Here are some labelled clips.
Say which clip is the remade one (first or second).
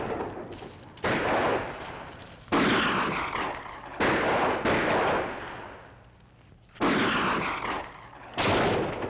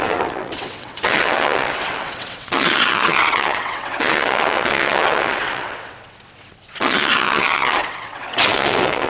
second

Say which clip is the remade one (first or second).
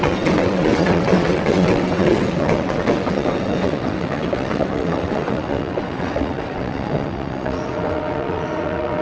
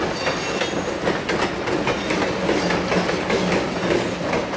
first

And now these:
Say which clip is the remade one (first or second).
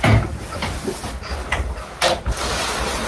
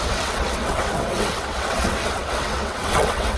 second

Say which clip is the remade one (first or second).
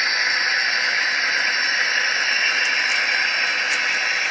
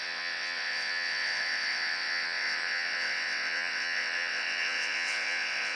second